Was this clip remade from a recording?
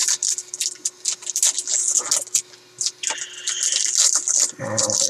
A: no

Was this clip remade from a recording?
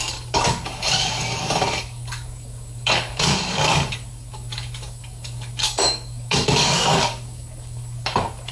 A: yes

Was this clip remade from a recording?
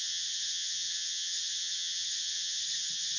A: yes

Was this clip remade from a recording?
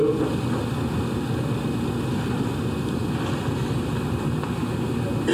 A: no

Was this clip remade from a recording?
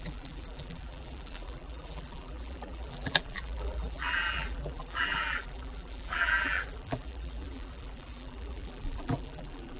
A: yes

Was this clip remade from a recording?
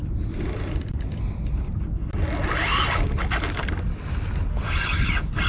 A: no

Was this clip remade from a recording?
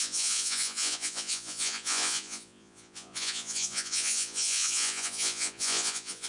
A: yes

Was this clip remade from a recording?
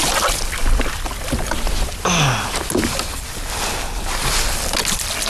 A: no